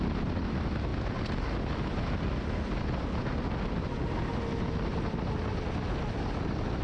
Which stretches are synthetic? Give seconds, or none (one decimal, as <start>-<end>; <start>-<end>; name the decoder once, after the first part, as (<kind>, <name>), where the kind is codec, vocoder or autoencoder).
none